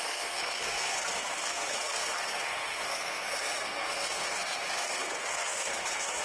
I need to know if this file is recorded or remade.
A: remade